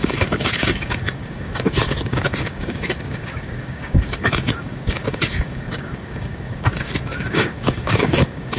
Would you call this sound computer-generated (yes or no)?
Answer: yes